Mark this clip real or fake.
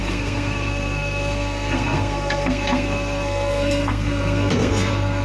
fake